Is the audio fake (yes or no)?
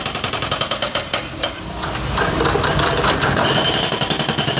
yes